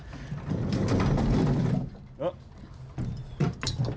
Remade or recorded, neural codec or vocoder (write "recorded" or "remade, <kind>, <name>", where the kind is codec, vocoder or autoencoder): recorded